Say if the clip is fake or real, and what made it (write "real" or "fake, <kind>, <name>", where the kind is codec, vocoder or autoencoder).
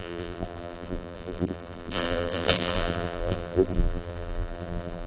fake, vocoder, BigVGAN v2